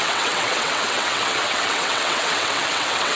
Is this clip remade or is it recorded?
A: remade